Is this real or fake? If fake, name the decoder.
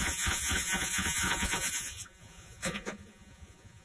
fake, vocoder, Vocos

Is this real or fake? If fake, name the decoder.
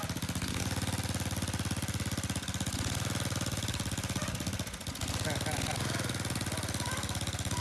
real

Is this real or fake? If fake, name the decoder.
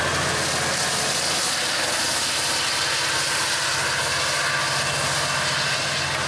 real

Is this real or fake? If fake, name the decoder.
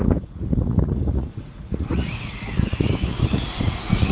fake, vocoder, Vocos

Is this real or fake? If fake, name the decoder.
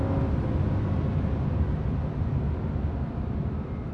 real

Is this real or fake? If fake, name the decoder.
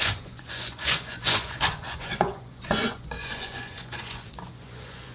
fake, vocoder, Vocos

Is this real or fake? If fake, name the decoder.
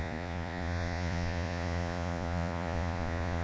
fake, vocoder, Vocos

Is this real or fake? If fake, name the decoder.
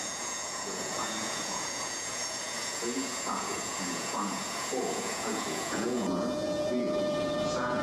fake, vocoder, Vocos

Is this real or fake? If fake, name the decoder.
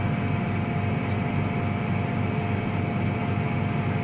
real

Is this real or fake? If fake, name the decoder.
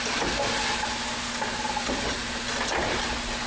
real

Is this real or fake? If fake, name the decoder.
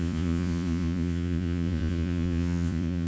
fake, vocoder, Vocos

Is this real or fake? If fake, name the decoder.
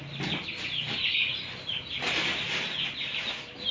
real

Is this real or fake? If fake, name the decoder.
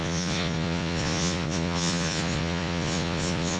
fake, vocoder, Vocos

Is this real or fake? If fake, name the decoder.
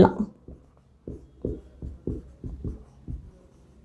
real